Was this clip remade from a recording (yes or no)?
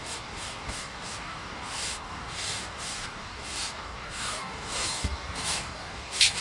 yes